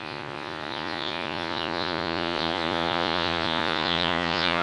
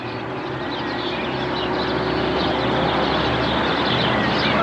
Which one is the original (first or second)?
second